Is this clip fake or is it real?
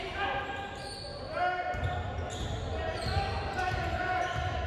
real